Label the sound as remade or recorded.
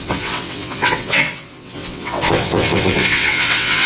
remade